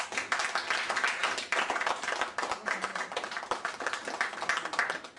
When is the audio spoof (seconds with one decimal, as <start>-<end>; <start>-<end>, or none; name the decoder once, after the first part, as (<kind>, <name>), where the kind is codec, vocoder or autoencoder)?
2.6-3.4 (vocoder, BigVGAN v2)